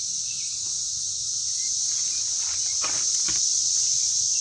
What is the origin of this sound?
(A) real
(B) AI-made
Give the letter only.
A